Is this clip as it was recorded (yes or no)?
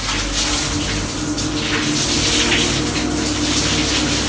yes